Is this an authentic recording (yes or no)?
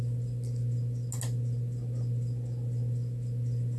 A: yes